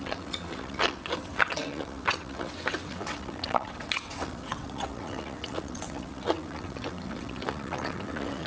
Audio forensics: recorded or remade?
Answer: remade